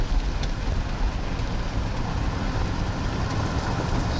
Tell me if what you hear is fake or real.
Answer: real